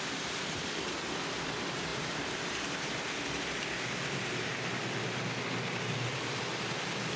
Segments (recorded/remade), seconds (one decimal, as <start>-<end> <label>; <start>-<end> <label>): 0.0-7.2 recorded